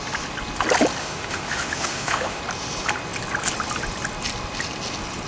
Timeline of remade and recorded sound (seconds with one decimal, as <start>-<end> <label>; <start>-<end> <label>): 0.0-1.0 recorded; 1.0-2.4 remade; 2.4-5.3 recorded